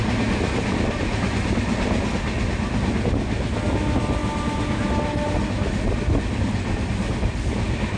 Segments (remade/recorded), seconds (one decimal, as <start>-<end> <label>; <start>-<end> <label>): 0.0-8.0 recorded